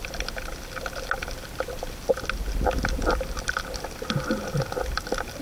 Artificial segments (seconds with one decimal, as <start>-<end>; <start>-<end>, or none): none